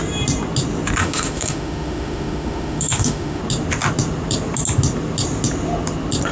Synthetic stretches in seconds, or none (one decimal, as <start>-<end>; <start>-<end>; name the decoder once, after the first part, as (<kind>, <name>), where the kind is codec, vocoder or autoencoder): 1.0-3.4 (autoencoder, DAC-VAE)